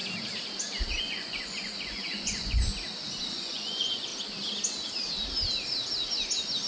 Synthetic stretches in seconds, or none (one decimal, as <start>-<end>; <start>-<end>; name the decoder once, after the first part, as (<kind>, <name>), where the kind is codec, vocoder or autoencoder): 1.0-2.7 (vocoder, Vocos); 3.3-4.1